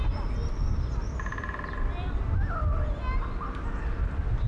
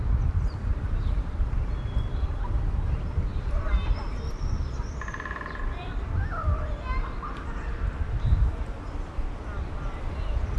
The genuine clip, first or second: first